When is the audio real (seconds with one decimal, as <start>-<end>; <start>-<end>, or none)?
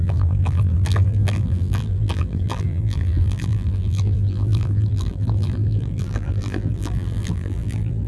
none